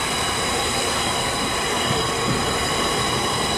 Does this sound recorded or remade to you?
recorded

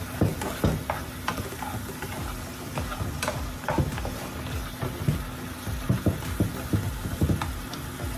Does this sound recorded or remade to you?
recorded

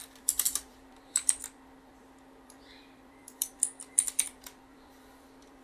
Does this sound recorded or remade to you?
remade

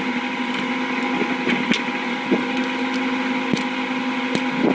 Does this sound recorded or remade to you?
recorded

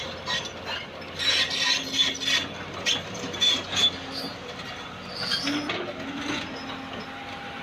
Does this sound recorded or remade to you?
recorded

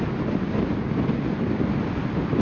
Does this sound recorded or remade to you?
recorded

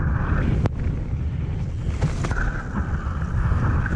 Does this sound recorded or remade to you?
recorded